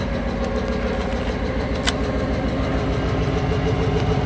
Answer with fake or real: real